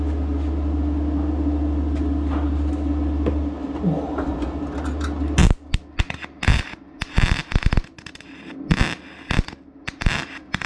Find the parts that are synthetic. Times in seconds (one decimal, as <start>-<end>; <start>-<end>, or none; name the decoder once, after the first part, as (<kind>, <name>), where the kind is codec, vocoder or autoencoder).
none